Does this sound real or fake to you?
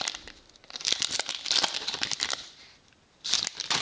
real